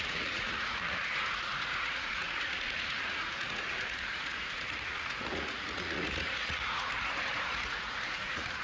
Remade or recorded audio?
remade